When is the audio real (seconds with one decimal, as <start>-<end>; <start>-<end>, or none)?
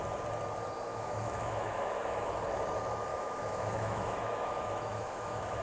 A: 0.0-0.9; 2.3-3.1